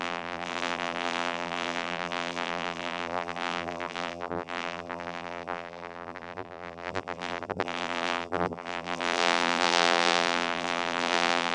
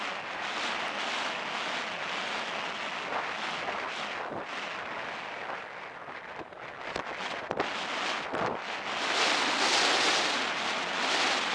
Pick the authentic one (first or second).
second